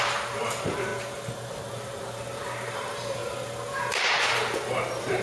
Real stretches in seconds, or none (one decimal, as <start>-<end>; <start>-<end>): 0.9-1.7; 3.2-3.9